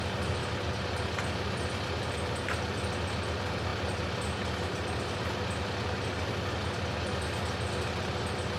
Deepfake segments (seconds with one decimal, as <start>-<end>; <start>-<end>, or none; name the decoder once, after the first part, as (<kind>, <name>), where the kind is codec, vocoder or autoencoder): none